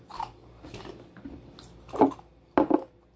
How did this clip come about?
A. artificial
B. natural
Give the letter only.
B